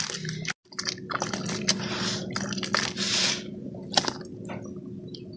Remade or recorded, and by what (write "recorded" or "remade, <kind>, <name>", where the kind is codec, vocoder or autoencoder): recorded